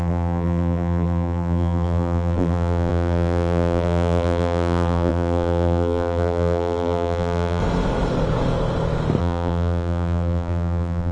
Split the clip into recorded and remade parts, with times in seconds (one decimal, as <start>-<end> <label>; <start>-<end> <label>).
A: 0.0-7.6 remade; 7.6-9.2 recorded; 9.2-11.1 remade